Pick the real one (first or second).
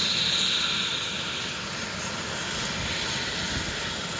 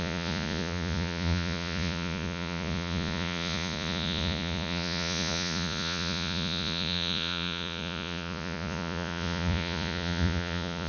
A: first